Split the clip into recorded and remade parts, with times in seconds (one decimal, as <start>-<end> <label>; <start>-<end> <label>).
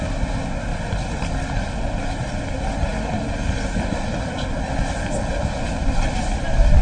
0.0-6.8 recorded